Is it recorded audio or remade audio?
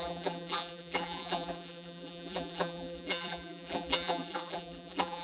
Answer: remade